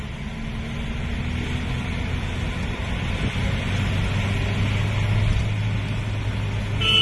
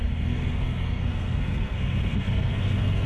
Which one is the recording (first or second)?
first